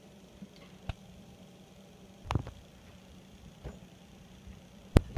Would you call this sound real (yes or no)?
no